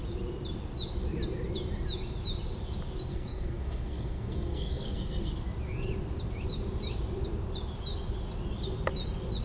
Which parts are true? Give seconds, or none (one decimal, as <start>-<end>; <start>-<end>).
0.0-3.1; 5.3-9.4